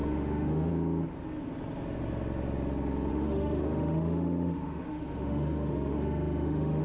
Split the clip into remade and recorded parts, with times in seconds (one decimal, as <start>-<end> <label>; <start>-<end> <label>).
0.0-0.7 remade; 0.7-3.1 recorded; 3.1-6.8 remade